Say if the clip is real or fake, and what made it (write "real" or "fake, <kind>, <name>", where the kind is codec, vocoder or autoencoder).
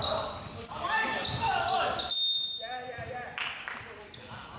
real